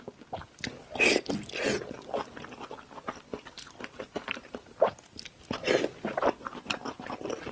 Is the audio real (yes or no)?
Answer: yes